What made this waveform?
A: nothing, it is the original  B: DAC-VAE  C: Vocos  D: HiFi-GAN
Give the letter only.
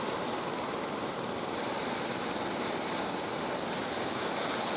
A